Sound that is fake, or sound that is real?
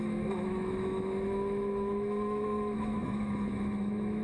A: fake